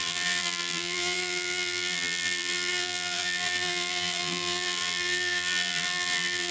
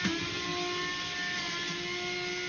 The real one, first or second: second